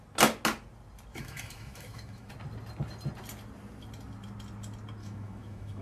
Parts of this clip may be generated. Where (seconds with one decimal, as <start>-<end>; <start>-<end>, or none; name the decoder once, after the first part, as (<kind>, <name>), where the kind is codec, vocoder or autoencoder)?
1.1-2.3 (autoencoder, DAC-VAE); 5.0-5.8